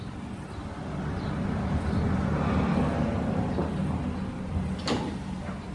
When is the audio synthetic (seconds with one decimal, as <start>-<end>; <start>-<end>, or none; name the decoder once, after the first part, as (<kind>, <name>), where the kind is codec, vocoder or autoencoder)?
none